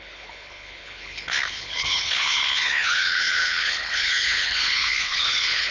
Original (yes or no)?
no